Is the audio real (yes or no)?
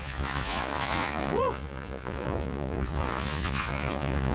no